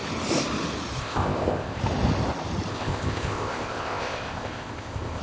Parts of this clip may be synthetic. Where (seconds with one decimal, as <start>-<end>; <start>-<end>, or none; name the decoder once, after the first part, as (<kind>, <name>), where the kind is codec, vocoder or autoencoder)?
1.0-1.8 (codec, ZipCodec); 2.7-5.2